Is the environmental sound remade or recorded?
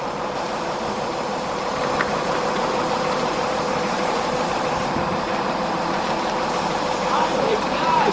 remade